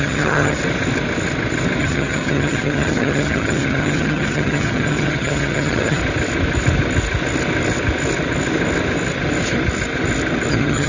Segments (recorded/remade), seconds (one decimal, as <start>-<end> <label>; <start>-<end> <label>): 0.0-0.6 remade; 0.6-1.8 recorded; 1.8-6.0 remade; 6.0-10.5 recorded; 10.5-10.9 remade